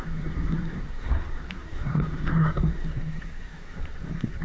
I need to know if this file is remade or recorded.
remade